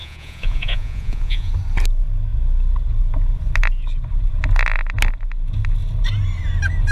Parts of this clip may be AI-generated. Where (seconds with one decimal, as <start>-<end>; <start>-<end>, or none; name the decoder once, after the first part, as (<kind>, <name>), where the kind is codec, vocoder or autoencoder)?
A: 0.0-1.5 (vocoder, Vocos)